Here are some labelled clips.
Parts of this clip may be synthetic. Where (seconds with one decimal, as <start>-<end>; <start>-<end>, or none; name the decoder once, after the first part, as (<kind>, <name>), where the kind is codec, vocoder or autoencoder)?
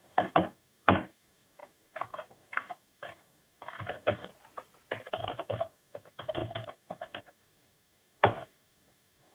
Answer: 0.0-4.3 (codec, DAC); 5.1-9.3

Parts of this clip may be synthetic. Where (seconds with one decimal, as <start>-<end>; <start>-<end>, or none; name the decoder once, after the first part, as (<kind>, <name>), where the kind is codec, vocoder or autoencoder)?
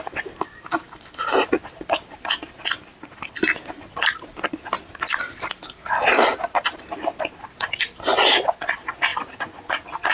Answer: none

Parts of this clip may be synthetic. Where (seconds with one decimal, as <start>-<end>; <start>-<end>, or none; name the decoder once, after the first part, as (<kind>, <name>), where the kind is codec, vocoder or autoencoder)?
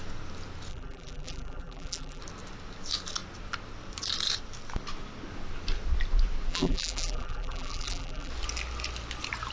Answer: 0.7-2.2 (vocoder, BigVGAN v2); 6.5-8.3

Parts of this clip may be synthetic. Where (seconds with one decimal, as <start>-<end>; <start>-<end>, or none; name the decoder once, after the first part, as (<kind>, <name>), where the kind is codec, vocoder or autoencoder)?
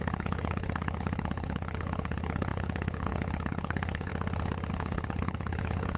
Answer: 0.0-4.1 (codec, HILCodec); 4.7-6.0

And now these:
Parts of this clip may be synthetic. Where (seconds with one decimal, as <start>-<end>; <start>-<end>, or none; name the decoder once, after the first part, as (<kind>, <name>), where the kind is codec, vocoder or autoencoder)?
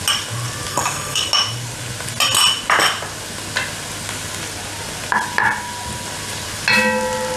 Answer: 0.7-1.3 (codec, SNAC)